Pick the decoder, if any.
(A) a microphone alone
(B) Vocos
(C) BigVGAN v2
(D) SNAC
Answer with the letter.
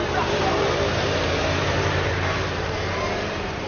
C